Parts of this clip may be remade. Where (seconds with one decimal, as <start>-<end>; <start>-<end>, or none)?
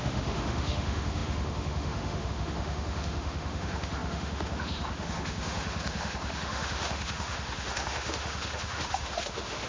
0.0-9.7